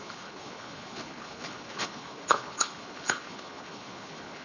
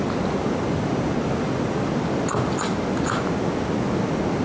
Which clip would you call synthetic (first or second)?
first